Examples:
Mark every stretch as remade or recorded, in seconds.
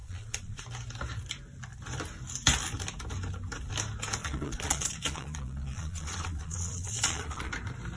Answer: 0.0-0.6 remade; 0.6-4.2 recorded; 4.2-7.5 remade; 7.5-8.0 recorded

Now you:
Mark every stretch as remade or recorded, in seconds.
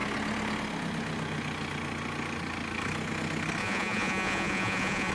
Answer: 0.0-3.6 recorded; 3.6-5.1 remade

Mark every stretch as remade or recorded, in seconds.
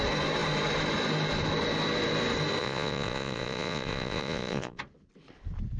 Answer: 0.0-2.6 recorded; 2.6-4.8 remade; 4.8-5.8 recorded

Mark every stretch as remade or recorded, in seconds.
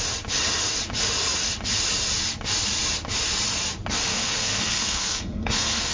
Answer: 0.0-4.1 recorded; 4.1-5.9 remade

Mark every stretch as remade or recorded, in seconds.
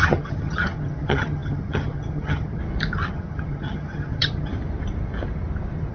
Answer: 0.0-2.6 remade; 2.6-3.1 recorded; 3.1-4.5 remade; 4.5-5.9 recorded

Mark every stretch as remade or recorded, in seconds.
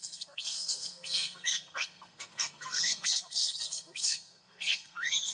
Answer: 0.0-5.3 remade